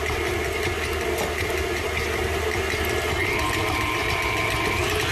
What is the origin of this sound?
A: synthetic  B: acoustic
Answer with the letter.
B